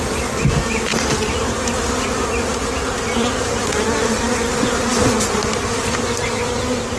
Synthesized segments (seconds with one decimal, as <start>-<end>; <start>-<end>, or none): none